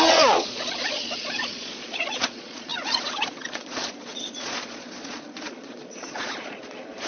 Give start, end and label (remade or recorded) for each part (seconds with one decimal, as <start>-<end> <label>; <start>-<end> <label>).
0.0-7.1 remade